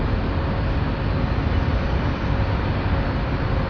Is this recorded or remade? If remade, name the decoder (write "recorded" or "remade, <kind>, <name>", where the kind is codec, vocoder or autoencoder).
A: recorded